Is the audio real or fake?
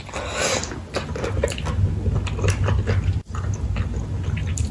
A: real